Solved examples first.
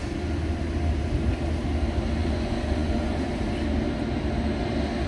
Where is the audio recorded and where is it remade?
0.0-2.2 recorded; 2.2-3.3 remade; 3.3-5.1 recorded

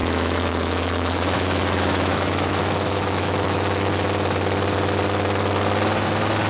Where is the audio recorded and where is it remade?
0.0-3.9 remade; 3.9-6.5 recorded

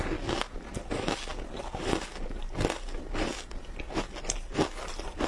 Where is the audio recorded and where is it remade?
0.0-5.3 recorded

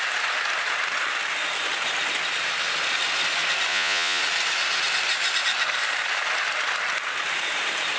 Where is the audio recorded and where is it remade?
0.0-3.7 recorded; 3.7-4.2 remade; 4.2-8.0 recorded

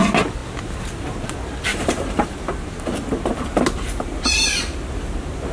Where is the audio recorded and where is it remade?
0.0-1.7 recorded; 1.7-2.3 remade; 2.3-5.5 recorded

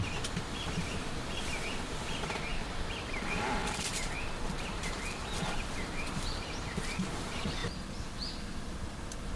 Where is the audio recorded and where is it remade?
0.0-2.5 recorded; 2.5-7.0 remade; 7.0-9.4 recorded